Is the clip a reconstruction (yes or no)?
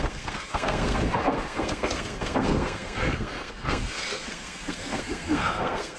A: yes